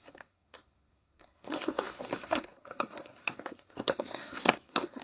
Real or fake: fake